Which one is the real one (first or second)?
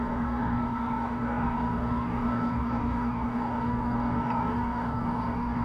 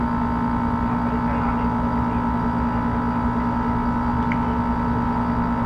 second